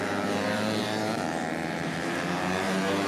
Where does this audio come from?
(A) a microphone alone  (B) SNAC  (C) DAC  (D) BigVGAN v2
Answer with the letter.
D